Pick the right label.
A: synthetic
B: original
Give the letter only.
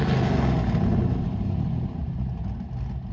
B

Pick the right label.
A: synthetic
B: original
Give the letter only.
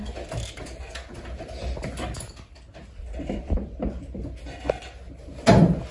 B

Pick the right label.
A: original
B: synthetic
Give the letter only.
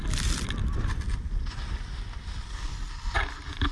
A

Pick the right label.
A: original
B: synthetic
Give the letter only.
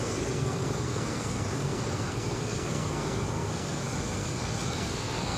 B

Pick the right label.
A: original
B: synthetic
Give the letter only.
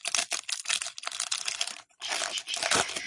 A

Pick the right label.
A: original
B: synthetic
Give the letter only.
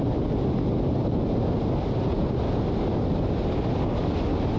A